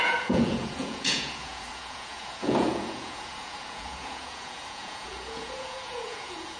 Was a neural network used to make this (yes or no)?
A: yes